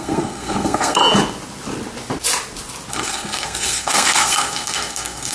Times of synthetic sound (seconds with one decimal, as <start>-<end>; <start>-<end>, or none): 0.0-1.0; 2.9-5.3